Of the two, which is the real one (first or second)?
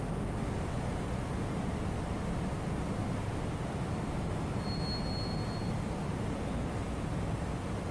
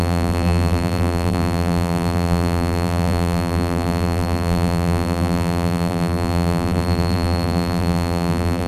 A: first